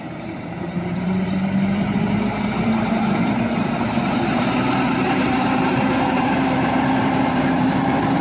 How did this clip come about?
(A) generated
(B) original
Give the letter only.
A